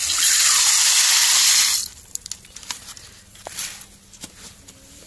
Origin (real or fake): real